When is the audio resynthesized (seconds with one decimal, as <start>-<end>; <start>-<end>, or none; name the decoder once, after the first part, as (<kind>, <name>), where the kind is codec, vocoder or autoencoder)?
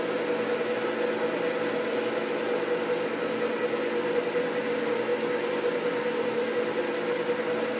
none